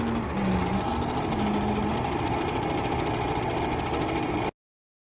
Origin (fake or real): real